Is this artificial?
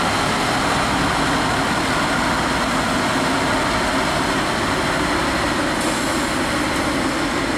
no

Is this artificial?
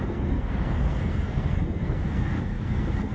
yes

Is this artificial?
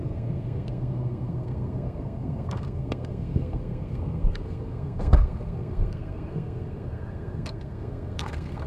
yes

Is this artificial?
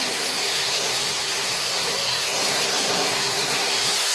yes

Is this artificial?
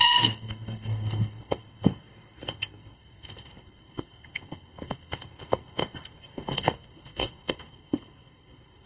yes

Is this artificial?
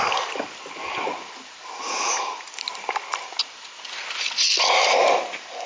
no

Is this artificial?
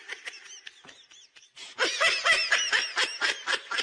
no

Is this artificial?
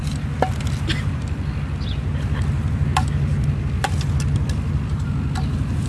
no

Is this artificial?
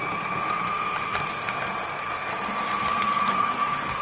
no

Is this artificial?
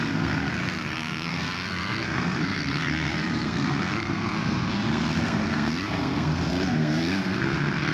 yes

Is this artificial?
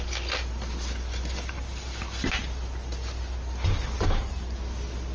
no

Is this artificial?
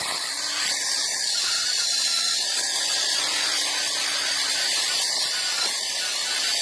no